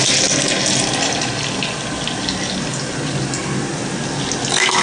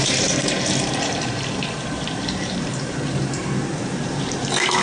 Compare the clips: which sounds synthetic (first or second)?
second